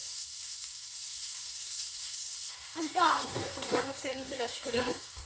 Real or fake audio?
fake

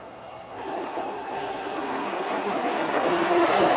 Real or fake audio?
fake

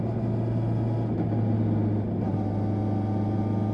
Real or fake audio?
real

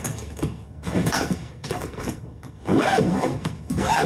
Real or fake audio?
fake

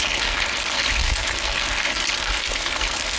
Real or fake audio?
fake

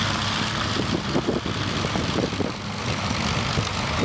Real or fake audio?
real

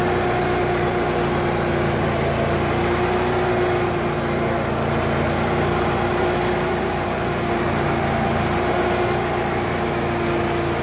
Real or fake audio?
real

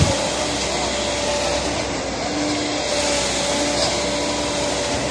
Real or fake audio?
real